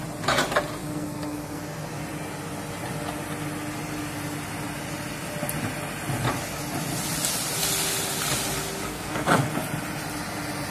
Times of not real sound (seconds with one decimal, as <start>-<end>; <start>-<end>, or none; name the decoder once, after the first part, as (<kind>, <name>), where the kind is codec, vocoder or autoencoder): 0.8-1.6 (codec, SNAC); 8.9-9.5